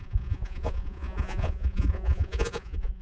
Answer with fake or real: fake